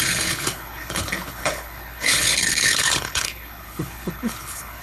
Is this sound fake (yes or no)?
yes